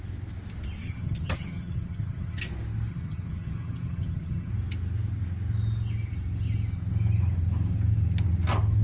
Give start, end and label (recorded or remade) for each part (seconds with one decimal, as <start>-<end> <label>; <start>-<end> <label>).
0.0-0.8 recorded; 0.8-2.4 remade; 2.4-2.9 recorded; 2.9-4.5 remade; 4.5-8.8 recorded